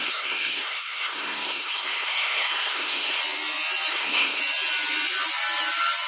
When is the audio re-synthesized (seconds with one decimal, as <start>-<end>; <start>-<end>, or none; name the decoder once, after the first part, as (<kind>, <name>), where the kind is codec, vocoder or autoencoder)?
0.0-3.2 (codec, SNAC); 3.9-4.4